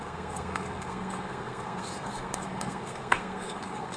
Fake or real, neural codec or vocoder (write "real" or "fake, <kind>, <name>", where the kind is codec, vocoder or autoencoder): fake, codec, SNAC